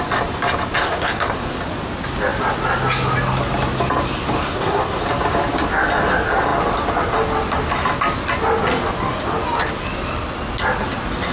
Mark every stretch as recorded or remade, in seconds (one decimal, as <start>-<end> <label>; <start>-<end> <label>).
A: 0.0-0.8 recorded; 0.8-1.6 remade; 1.6-4.4 recorded; 4.4-5.0 remade; 5.0-11.3 recorded

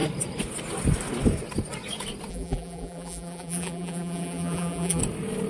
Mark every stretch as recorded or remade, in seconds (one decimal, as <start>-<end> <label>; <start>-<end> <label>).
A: 0.0-2.3 recorded; 2.3-5.0 remade; 5.0-5.5 recorded

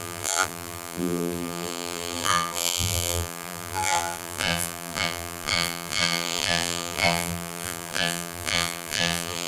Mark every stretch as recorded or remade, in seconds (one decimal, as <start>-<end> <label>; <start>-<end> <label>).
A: 0.0-9.5 remade